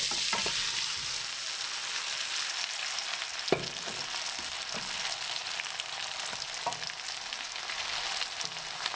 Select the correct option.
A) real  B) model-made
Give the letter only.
A